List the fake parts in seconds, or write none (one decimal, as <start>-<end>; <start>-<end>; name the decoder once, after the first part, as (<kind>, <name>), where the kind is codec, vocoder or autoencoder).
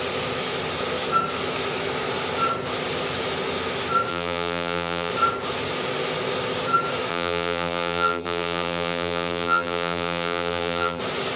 4.1-5.1 (vocoder, BigVGAN v2); 7.1-11.0